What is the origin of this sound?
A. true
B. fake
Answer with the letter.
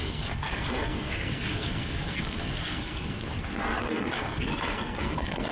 B